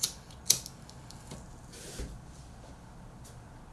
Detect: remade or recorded recorded